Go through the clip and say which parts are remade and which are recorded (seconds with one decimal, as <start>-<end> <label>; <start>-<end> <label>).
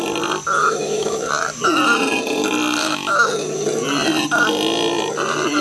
0.0-0.6 recorded; 0.6-1.3 remade; 1.3-2.8 recorded; 2.8-3.3 remade; 3.3-5.6 recorded